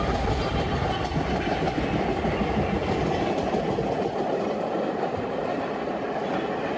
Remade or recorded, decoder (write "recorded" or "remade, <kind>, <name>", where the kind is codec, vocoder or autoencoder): recorded